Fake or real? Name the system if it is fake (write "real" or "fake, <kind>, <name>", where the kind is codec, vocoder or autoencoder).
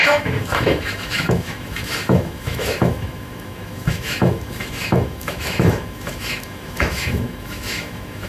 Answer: fake, autoencoder, DAC-VAE